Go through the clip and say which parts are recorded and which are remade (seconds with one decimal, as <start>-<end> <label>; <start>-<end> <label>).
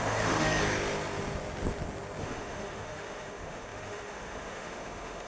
0.0-0.5 remade; 0.5-2.2 recorded; 2.2-5.3 remade